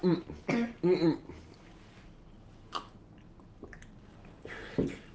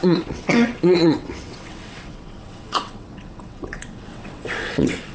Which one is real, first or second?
first